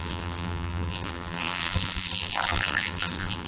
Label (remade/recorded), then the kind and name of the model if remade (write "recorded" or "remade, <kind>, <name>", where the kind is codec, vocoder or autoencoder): remade, vocoder, BigVGAN v2